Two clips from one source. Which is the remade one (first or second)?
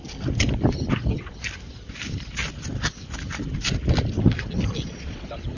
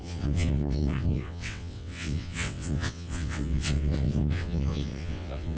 second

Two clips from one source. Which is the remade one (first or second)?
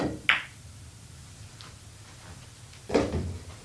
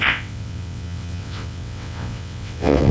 second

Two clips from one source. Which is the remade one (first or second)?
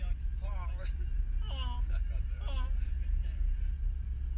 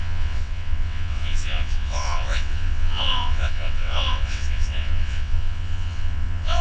second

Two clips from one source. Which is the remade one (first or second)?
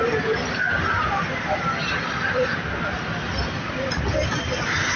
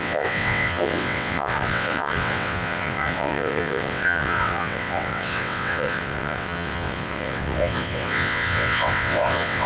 second